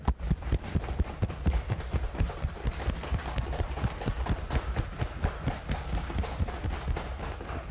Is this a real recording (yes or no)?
yes